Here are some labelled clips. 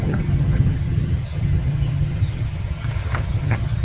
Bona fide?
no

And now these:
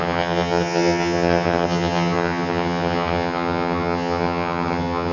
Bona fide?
no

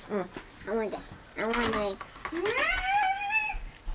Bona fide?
yes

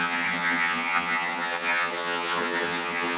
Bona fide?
no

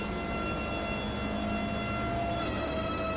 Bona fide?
yes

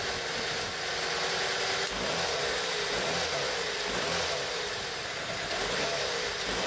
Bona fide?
yes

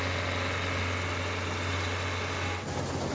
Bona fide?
yes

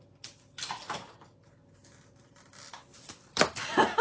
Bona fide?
yes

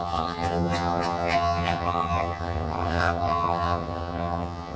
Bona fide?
no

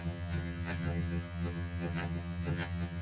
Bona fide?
no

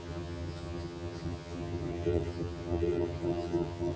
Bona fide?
no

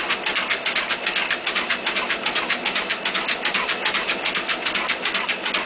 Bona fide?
yes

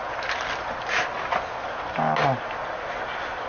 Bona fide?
yes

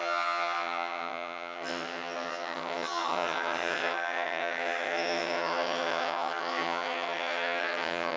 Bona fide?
no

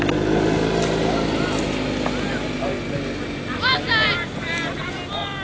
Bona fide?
yes